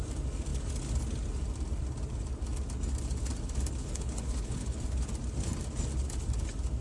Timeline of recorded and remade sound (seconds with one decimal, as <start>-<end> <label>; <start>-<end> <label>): 0.0-3.8 recorded; 3.8-4.8 remade; 4.8-6.8 recorded